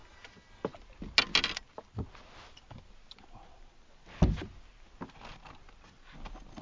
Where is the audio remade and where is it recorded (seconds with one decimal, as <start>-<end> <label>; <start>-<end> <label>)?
0.0-6.6 recorded